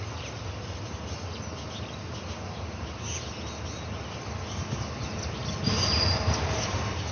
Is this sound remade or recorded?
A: recorded